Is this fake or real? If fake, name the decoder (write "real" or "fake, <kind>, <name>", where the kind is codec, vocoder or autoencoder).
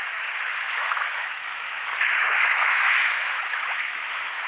fake, autoencoder, DAC-VAE